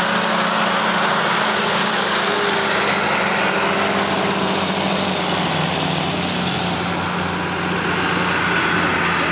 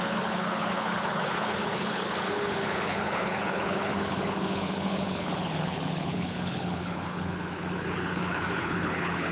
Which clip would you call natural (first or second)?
first